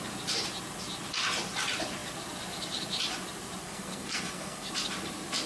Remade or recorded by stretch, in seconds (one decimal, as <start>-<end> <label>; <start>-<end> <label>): 0.0-3.6 recorded; 3.6-4.7 remade; 4.7-5.5 recorded